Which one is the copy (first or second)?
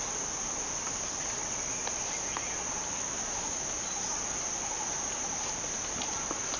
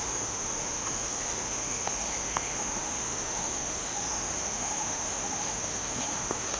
second